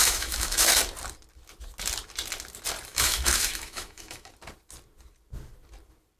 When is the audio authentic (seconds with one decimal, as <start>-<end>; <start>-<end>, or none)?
0.8-2.9; 4.3-6.2